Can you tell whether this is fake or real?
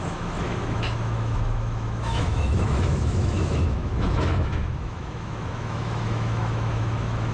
fake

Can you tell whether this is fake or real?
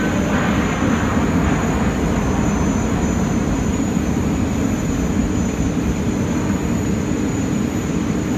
real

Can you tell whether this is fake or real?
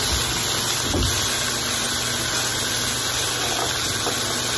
real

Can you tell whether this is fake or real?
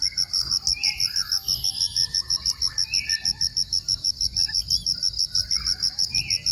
real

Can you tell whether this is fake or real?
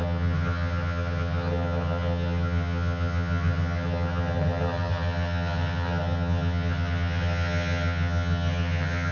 fake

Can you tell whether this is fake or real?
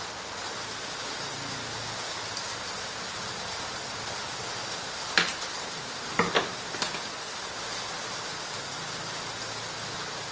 real